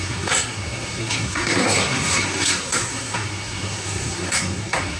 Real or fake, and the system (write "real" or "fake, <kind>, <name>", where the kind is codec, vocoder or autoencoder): fake, codec, SNAC